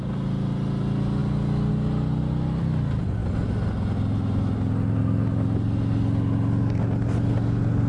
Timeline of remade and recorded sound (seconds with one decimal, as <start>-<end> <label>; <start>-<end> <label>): 0.0-7.9 recorded

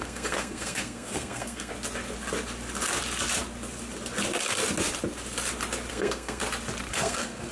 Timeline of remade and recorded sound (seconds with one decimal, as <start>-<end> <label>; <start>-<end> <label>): 0.0-1.7 remade; 1.7-5.9 recorded; 5.9-6.4 remade; 6.4-6.9 recorded; 6.9-7.5 remade

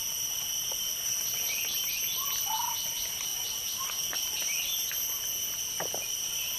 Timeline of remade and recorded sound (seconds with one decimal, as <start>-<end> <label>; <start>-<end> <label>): 0.0-3.3 recorded; 3.3-3.9 remade; 3.9-6.6 recorded

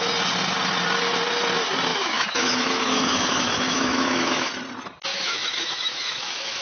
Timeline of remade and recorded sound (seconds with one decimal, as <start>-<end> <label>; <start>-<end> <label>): 0.0-1.9 recorded; 1.9-4.5 remade; 4.5-5.1 recorded; 5.1-6.6 remade

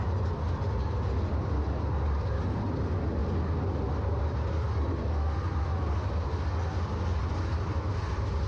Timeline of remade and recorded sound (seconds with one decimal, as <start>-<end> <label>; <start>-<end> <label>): 0.0-8.5 recorded

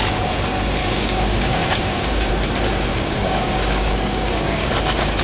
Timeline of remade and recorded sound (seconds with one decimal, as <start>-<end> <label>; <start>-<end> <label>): 0.0-0.8 recorded; 0.8-2.3 remade; 2.3-2.9 recorded; 2.9-4.7 remade; 4.7-5.2 recorded

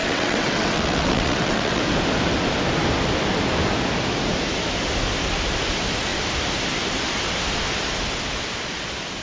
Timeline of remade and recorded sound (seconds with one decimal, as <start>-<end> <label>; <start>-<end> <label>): 0.0-1.8 remade; 1.8-9.2 recorded

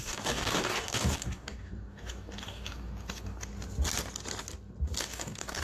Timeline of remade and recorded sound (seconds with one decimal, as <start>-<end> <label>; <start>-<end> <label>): 0.0-3.5 remade; 3.5-5.0 recorded; 5.0-5.6 remade